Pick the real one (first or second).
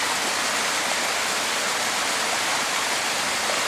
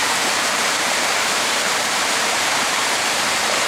first